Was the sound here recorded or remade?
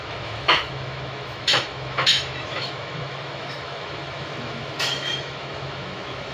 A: remade